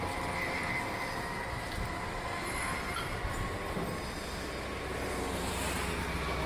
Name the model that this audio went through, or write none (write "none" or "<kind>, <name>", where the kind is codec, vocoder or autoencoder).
none